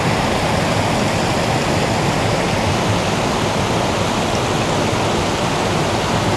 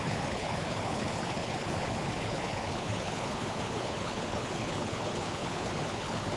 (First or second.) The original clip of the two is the first